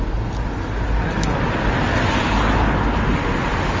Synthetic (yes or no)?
no